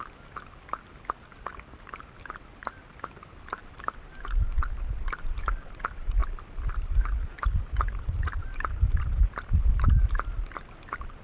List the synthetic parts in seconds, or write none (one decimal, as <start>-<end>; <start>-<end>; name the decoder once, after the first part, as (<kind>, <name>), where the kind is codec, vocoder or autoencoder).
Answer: 6.2-9.0 (vocoder, BigVGAN v2)